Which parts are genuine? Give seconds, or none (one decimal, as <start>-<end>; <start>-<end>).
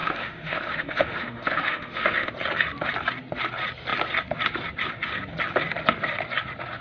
2.3-6.8